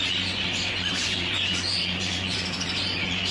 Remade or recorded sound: remade